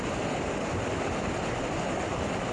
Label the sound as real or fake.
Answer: real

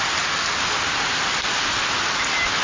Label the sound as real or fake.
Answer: real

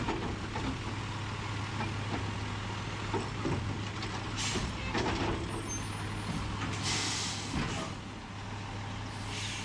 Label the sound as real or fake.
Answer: real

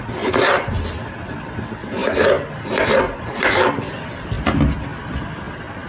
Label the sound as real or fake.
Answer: real